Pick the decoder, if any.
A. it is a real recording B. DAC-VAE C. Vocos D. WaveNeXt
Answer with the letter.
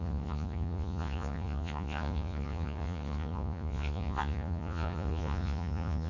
C